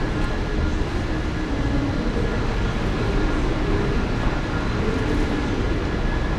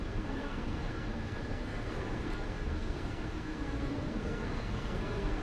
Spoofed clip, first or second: second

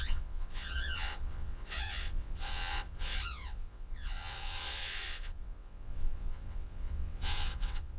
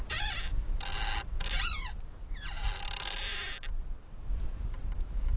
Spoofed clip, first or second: first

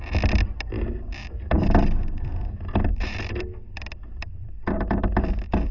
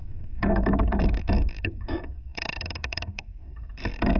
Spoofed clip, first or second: second